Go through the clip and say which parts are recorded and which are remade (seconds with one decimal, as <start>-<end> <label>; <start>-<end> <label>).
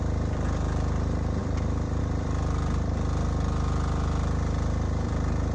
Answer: 0.0-5.5 remade